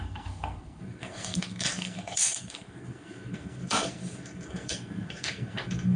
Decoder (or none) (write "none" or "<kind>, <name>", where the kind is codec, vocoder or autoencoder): codec, SNAC